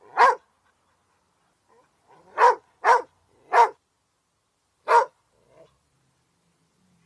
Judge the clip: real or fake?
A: real